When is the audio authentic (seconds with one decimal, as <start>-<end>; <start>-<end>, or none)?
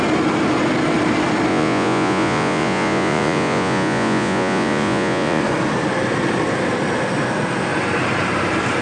0.0-1.5; 5.4-8.8